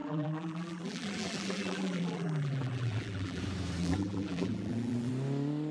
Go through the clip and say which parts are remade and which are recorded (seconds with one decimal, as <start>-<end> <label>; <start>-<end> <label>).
0.0-3.4 remade; 3.4-3.8 recorded; 3.8-5.1 remade; 5.1-5.7 recorded